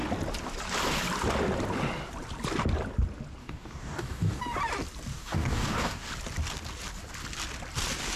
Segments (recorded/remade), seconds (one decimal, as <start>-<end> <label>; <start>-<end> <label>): 0.0-3.4 recorded; 3.4-4.4 remade; 4.4-5.1 recorded; 5.1-6.1 remade; 6.1-8.2 recorded